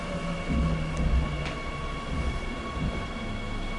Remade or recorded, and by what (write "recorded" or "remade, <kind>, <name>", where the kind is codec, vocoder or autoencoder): recorded